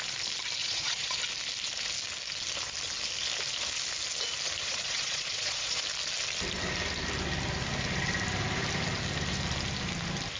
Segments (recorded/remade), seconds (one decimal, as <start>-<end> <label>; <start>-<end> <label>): 0.0-0.6 recorded; 0.6-1.2 remade; 1.2-4.6 recorded; 4.6-5.8 remade; 5.8-10.4 recorded